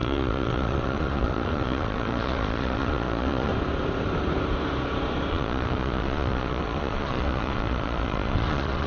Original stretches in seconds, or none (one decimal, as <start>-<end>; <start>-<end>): 3.5-5.3